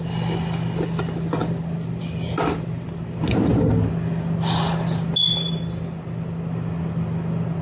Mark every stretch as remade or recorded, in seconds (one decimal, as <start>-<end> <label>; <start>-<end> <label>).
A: 0.0-7.6 recorded